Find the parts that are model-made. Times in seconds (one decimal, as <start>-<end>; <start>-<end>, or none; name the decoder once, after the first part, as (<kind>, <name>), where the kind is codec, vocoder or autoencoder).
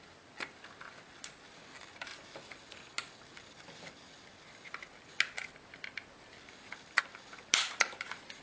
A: none